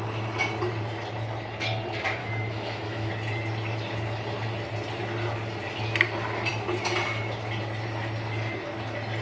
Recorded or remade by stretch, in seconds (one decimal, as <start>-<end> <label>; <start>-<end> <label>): 0.0-2.2 recorded; 2.2-3.1 remade; 3.1-9.2 recorded